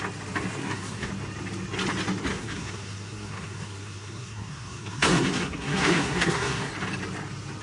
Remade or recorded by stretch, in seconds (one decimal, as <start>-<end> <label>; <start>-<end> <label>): 0.0-0.6 recorded; 0.6-1.1 remade; 1.1-2.3 recorded; 2.3-6.7 remade; 6.7-7.6 recorded